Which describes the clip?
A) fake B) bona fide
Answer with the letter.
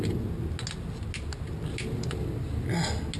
B